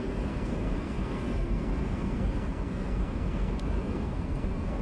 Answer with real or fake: fake